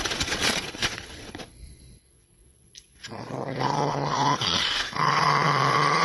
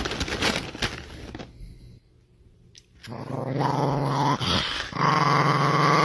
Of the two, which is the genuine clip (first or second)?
second